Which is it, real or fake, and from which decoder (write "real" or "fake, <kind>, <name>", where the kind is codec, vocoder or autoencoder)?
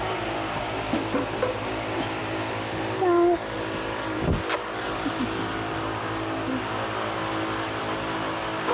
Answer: real